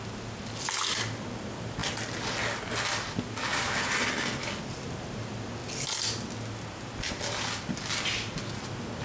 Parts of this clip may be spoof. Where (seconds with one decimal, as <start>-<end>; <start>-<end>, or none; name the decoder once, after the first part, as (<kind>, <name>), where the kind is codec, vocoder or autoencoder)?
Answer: none

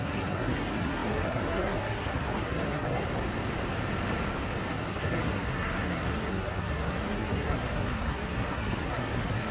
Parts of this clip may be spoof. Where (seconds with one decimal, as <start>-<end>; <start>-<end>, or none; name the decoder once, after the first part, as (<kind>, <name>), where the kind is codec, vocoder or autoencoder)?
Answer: 0.0-3.0 (codec, SNAC); 4.7-9.5